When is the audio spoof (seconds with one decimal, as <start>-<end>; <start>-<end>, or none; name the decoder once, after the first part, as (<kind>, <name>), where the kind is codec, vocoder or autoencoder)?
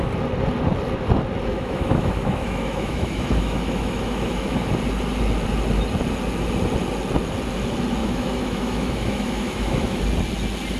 1.5-4.7 (autoencoder, DAC-VAE); 8.0-10.0